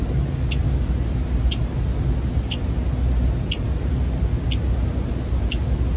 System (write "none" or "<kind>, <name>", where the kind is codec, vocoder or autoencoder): none